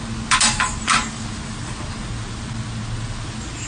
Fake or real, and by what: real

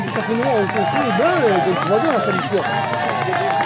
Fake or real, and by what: real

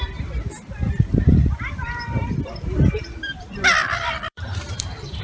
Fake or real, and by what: fake, vocoder, BigVGAN v2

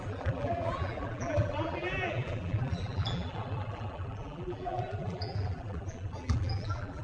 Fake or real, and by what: fake, vocoder, BigVGAN v2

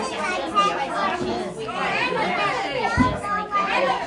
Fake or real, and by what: real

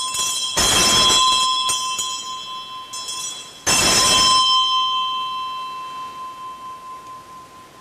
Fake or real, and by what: real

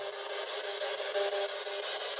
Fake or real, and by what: real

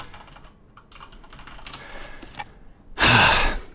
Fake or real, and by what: real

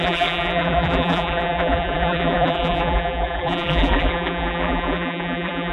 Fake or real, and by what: fake, vocoder, BigVGAN v2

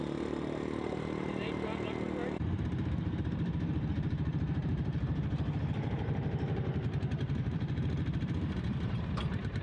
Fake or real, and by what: fake, vocoder, BigVGAN v2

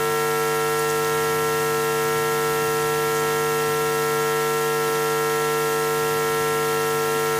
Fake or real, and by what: real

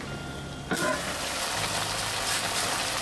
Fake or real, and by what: real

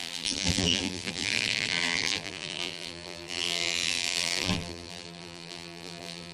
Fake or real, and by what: fake, vocoder, BigVGAN v2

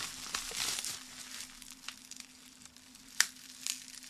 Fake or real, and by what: fake, vocoder, BigVGAN v2